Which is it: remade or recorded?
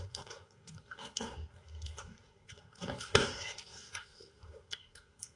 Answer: remade